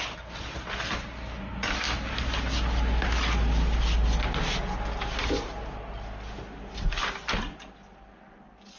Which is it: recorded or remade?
recorded